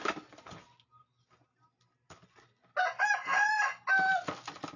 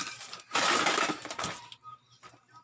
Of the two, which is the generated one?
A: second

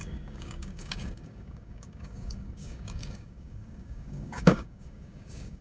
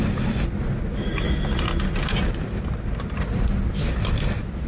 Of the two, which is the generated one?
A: first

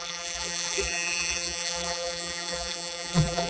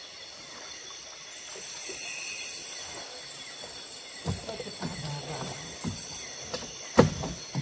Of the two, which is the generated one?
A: first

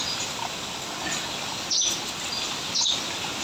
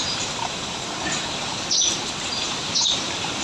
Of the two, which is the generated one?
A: second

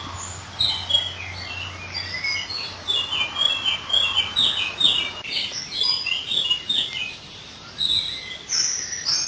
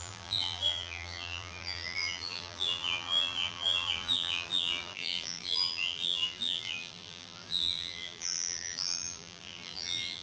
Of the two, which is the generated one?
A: second